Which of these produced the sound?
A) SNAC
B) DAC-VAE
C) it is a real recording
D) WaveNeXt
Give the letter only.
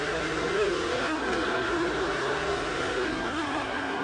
A